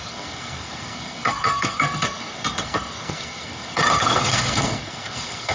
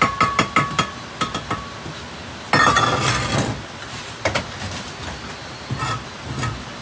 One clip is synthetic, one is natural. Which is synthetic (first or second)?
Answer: first